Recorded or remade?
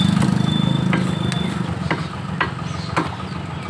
recorded